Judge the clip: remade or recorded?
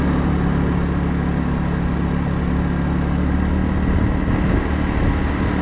recorded